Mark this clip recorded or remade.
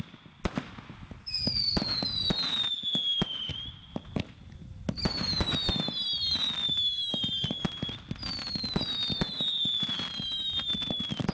recorded